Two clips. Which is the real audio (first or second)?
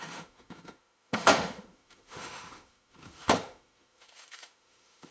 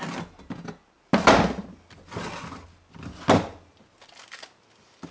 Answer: second